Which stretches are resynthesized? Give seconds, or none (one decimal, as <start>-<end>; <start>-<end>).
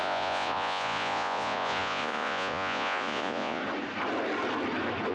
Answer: 0.0-3.6